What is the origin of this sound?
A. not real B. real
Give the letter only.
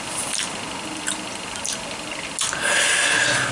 B